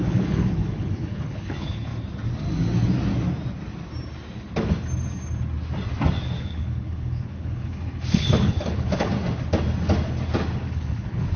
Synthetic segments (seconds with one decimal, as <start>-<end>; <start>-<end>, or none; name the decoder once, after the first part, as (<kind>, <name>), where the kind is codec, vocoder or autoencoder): 0.0-1.9 (codec, HILCodec); 6.4-9.1; 10.7-11.4